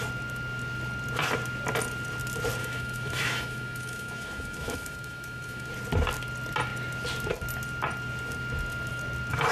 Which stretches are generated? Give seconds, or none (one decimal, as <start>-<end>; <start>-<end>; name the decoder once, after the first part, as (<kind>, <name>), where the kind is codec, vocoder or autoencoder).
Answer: 2.6-5.7 (autoencoder, DAC-VAE)